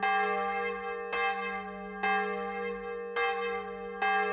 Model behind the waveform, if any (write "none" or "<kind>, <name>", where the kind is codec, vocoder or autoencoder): none